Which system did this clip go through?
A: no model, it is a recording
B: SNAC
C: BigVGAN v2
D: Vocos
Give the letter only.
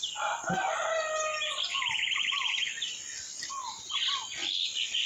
A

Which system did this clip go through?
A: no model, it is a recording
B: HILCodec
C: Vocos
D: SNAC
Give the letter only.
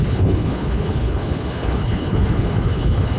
B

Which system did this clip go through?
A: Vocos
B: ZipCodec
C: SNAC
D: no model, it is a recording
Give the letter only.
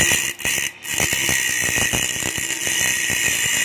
D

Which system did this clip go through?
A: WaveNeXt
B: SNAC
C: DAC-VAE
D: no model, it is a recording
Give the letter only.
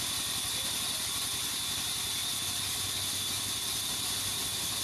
D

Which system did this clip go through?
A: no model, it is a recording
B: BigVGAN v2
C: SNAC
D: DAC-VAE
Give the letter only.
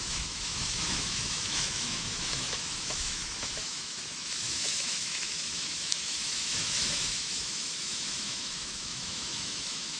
D